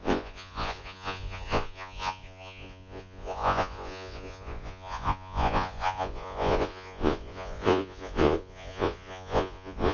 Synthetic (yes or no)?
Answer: yes